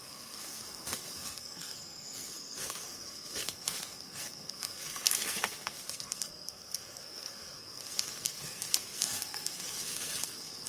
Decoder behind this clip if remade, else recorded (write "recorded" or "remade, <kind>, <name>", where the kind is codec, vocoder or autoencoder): remade, codec, SNAC